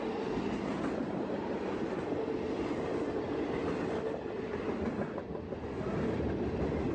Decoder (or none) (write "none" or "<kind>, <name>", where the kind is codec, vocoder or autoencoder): none